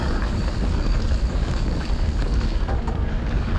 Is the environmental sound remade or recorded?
remade